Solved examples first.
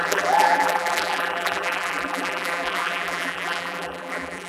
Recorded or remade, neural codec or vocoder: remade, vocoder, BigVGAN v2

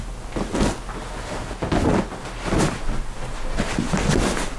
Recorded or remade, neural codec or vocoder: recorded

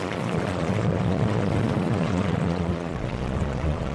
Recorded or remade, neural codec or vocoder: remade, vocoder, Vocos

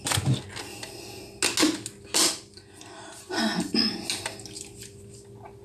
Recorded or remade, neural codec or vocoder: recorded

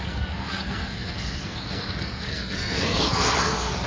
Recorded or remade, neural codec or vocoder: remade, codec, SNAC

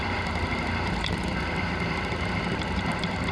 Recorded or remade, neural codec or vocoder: remade, vocoder, BigVGAN v2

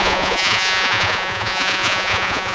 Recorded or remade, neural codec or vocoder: remade, vocoder, Vocos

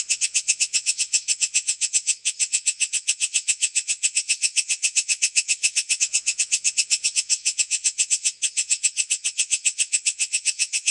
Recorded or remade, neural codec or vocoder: remade, vocoder, Vocos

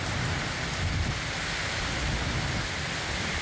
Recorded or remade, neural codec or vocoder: recorded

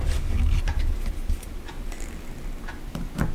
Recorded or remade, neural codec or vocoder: recorded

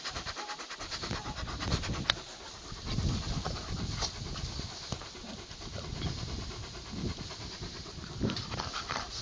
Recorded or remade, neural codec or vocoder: recorded